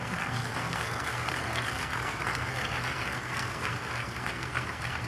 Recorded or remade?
remade